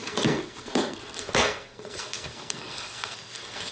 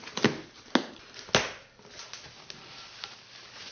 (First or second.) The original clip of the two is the second